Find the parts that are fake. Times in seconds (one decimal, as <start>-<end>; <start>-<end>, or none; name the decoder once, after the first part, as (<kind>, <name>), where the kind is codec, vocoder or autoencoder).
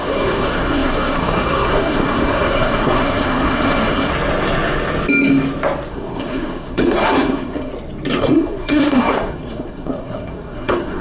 0.0-4.1 (codec, SNAC); 5.9-7.7; 8.2-11.0